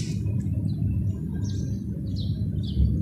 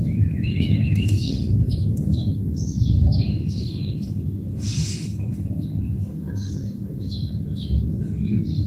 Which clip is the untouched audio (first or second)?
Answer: first